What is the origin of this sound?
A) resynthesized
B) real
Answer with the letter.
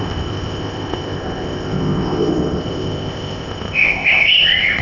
A